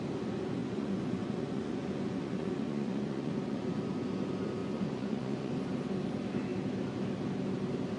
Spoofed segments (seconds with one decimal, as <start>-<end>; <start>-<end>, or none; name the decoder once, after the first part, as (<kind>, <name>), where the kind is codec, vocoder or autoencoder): 0.6-3.8 (vocoder, Vocos); 4.6-5.5